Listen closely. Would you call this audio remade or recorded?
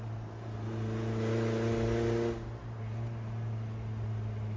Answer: recorded